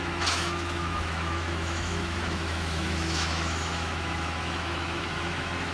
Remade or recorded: remade